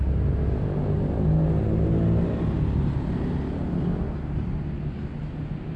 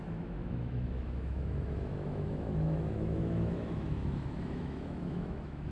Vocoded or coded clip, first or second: second